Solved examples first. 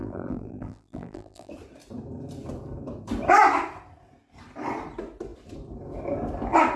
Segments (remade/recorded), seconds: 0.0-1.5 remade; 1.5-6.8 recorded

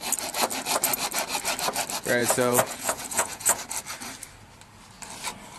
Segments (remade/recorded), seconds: 0.0-2.2 recorded; 2.2-3.6 remade; 3.6-5.6 recorded

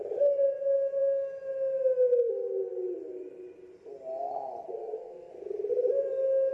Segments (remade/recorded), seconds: 0.0-4.7 recorded; 4.7-5.3 remade; 5.3-6.5 recorded

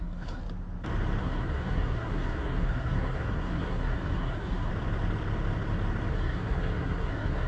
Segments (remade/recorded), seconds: 0.0-0.4 remade; 0.4-1.2 recorded; 1.2-4.7 remade; 4.7-6.1 recorded; 6.1-7.5 remade

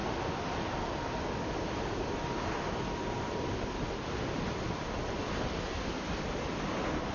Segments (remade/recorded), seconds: 0.0-7.1 recorded

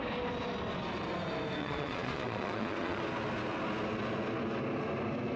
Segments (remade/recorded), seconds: 0.0-1.6 recorded; 1.6-3.0 remade; 3.0-5.4 recorded

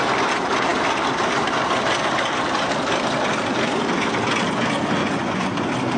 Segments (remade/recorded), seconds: 0.0-5.0 recorded; 5.0-5.5 remade; 5.5-6.0 recorded

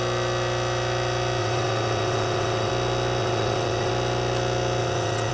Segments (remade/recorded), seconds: 0.0-1.4 recorded; 1.4-2.7 remade; 2.7-3.2 recorded; 3.2-3.9 remade; 3.9-4.8 recorded; 4.8-5.3 remade